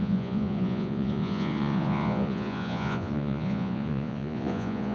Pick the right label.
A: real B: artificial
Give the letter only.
B